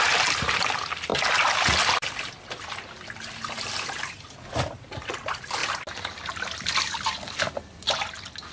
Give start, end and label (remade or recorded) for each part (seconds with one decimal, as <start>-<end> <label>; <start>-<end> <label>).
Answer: 0.0-8.5 recorded